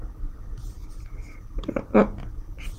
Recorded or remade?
recorded